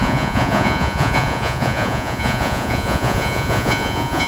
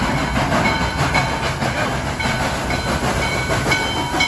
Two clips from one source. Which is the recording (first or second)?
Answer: second